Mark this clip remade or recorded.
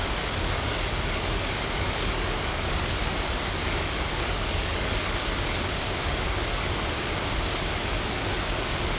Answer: remade